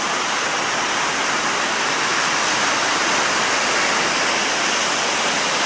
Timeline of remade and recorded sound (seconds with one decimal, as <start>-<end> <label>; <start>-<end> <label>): 0.0-5.7 recorded